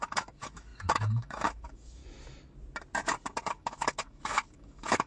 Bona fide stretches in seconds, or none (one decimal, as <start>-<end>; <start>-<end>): 2.0-3.5